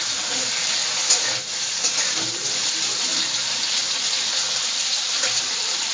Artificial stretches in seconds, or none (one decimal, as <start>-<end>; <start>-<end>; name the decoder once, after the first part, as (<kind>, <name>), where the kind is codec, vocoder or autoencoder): 0.0-0.8 (vocoder, BigVGAN v2); 1.4-3.1; 4.6-5.9